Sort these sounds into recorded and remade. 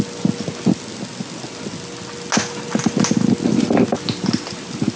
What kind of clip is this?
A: recorded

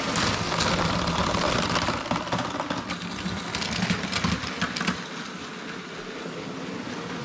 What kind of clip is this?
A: recorded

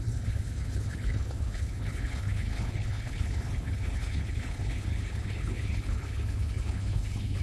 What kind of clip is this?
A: remade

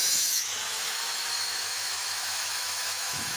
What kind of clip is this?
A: remade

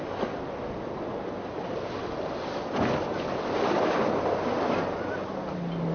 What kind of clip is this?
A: recorded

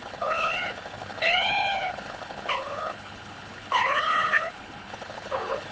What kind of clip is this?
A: remade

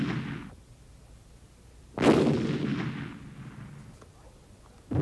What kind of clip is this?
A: recorded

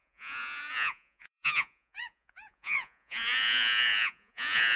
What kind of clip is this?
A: remade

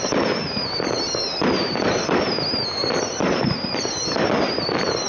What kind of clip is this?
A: recorded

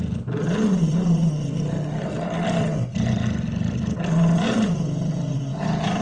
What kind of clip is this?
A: recorded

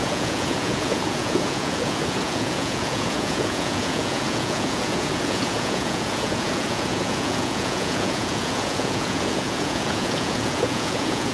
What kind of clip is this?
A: remade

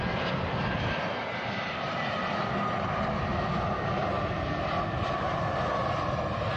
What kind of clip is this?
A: recorded